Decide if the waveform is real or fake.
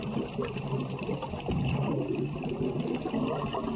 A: real